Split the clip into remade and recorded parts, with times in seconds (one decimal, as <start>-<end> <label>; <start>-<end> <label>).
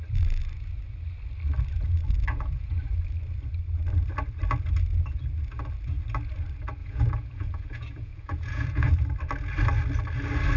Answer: 0.0-2.3 recorded; 2.3-2.8 remade; 2.8-6.8 recorded; 6.8-8.9 remade; 8.9-10.6 recorded